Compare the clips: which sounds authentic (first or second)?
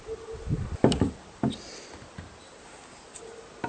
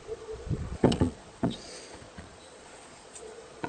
first